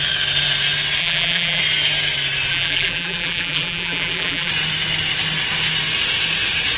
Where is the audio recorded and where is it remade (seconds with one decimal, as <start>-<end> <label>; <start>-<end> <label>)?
0.0-1.0 recorded; 1.0-1.6 remade; 1.6-2.5 recorded; 2.5-4.5 remade; 4.5-6.8 recorded